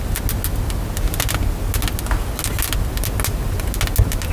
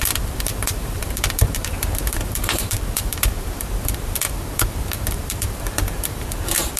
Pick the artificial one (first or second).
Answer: second